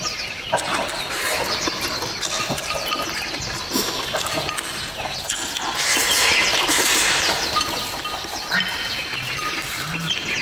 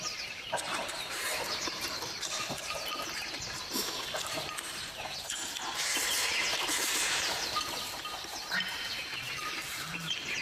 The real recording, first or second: first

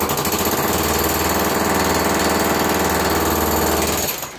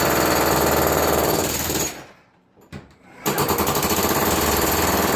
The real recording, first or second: first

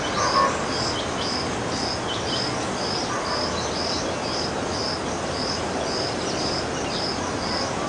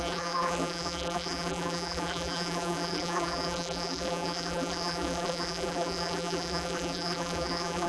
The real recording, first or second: first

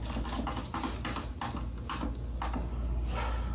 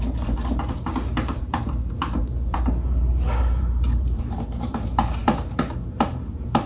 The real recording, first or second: first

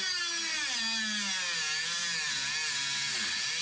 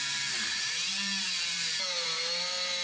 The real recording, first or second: first